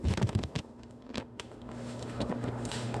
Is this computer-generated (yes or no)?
yes